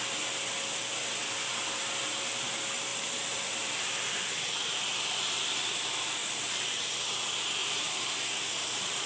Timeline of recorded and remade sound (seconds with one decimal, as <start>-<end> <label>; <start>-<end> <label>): 0.0-2.9 recorded; 2.9-5.5 remade; 5.5-6.2 recorded; 6.2-6.9 remade; 6.9-7.6 recorded; 7.6-9.1 remade